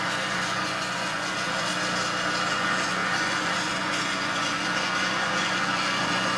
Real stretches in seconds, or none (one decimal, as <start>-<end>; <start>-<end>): 1.7-2.5